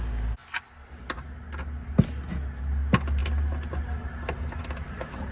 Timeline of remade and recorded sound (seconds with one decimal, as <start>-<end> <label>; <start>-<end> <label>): 0.0-5.3 recorded

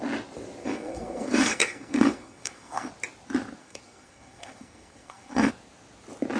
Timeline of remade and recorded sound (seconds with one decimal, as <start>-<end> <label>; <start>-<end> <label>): 0.0-0.6 recorded; 0.6-2.9 remade; 2.9-3.6 recorded; 3.6-5.5 remade; 5.5-6.4 recorded

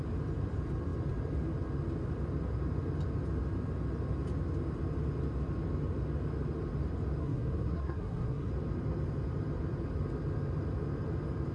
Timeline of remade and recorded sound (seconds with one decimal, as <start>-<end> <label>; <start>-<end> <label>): 0.0-7.2 recorded; 7.2-8.5 remade; 8.5-11.5 recorded

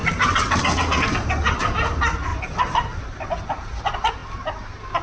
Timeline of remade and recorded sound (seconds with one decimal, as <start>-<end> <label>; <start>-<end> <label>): 0.0-5.0 recorded

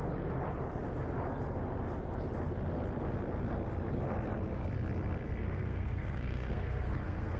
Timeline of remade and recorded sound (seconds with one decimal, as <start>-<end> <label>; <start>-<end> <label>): 0.0-5.4 recorded; 5.4-7.4 remade

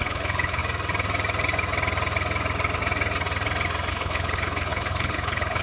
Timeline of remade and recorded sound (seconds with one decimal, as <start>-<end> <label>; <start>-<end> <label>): 0.0-0.6 remade; 0.6-3.9 recorded; 3.9-5.6 remade